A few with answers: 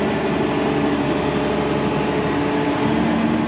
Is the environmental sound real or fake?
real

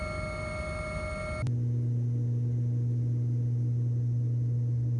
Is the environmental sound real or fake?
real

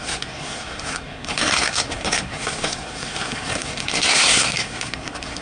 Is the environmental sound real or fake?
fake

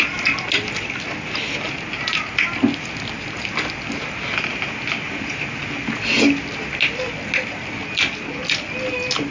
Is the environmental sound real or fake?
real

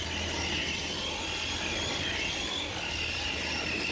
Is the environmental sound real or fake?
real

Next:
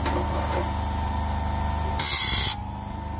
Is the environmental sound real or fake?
real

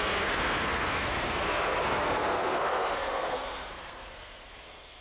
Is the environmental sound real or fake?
fake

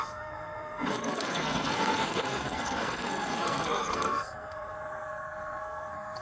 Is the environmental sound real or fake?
fake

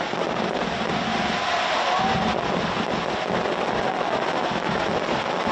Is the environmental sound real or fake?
real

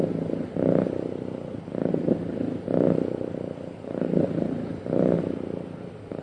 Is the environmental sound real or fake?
real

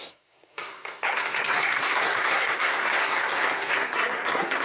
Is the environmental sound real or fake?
fake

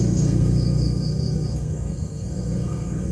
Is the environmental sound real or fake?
fake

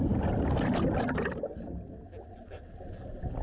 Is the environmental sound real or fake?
real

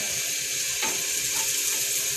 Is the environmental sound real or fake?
real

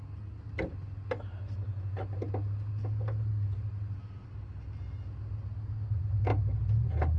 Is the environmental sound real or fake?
real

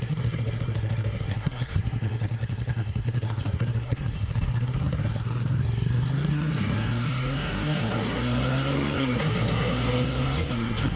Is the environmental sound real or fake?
fake